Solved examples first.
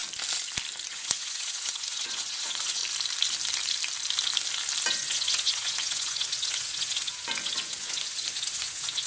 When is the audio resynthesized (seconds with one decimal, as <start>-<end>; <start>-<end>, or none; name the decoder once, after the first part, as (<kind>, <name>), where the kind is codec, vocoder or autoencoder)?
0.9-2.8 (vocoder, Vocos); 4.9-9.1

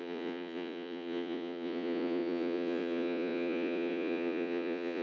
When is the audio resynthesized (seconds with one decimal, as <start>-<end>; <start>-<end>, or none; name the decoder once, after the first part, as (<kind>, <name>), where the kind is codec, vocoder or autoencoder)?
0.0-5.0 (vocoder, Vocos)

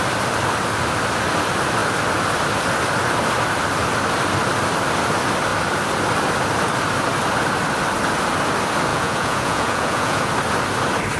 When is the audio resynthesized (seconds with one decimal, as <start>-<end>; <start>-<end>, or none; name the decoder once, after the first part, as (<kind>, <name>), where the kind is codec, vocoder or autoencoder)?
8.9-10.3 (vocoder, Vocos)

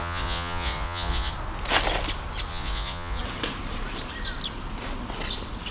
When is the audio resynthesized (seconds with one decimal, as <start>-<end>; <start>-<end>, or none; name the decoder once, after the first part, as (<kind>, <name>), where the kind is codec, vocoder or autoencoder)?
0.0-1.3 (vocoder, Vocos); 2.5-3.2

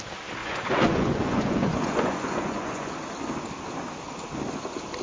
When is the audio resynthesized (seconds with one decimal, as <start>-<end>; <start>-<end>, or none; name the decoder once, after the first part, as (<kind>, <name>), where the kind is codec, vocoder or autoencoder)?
0.4-2.9 (vocoder, Vocos)